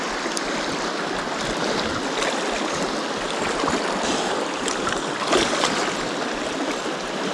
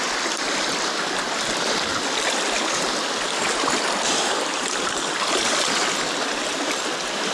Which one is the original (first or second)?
first